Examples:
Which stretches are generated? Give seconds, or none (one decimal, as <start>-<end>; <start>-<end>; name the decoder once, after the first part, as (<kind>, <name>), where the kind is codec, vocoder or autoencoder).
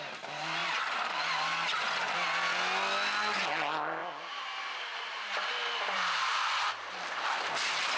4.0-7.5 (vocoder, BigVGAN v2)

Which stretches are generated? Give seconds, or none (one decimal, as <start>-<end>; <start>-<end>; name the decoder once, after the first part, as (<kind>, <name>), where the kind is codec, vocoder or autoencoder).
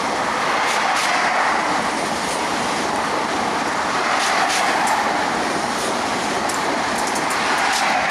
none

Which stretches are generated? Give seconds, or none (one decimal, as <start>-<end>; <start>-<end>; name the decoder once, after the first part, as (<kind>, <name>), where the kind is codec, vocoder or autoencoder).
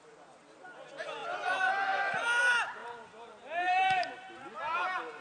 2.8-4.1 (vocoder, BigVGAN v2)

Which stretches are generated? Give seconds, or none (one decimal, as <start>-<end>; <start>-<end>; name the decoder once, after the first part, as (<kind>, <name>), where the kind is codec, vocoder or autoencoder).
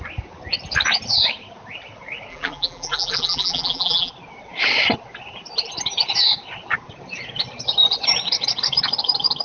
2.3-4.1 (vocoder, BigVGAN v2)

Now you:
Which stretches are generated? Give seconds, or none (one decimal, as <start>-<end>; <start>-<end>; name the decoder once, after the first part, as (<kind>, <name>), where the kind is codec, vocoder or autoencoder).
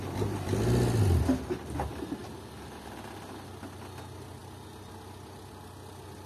none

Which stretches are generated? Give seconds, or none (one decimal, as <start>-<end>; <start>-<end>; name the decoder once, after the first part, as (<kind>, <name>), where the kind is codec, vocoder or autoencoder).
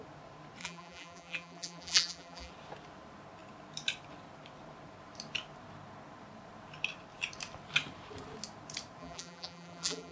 0.6-2.5 (vocoder, BigVGAN v2); 9.0-10.1